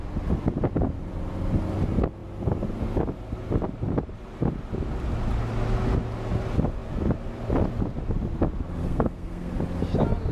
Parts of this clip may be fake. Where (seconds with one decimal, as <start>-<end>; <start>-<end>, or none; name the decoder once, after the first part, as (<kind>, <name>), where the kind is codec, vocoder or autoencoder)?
8.8-9.5 (codec, SNAC)